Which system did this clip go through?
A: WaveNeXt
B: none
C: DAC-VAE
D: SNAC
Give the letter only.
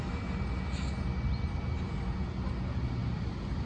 B